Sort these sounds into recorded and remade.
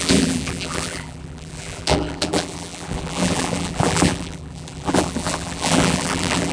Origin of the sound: remade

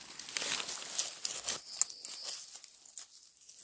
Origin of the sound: recorded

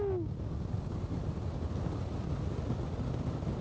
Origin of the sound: recorded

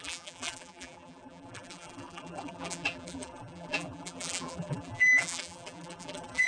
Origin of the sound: remade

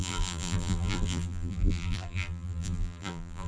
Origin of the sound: remade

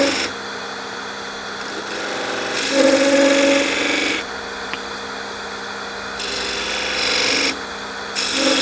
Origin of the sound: recorded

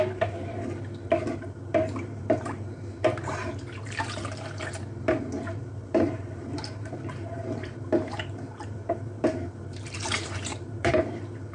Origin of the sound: remade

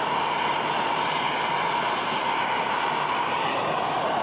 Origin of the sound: recorded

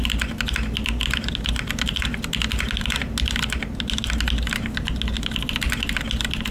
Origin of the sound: recorded